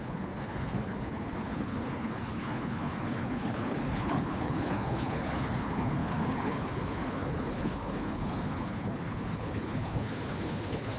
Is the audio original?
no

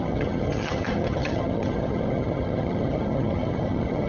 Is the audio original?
no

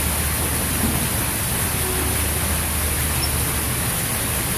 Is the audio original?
yes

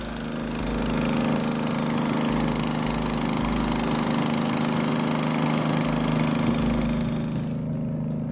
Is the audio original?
yes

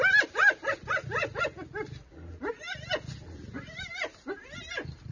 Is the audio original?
yes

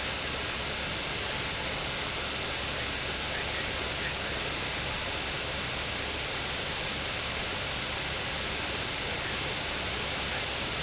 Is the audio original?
yes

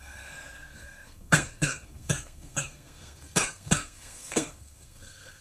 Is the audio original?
no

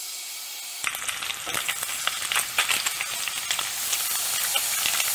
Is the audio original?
yes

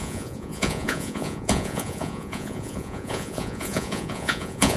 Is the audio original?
no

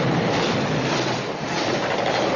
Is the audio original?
yes